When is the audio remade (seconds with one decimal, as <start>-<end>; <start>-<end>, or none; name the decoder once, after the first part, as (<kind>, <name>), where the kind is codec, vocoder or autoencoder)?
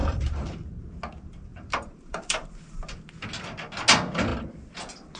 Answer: 0.0-0.6 (vocoder, BigVGAN v2); 1.5-2.5